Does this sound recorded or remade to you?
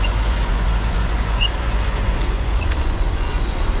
remade